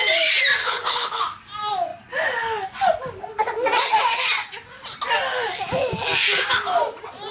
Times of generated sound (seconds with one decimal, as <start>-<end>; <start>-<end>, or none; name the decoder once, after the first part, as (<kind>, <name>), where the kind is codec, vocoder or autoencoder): 0.6-1.2 (codec, HILCodec)